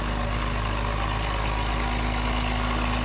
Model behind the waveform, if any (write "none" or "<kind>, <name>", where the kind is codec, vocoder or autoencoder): none